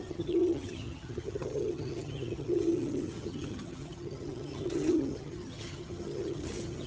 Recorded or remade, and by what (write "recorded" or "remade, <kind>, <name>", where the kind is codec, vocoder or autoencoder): remade, vocoder, HiFi-GAN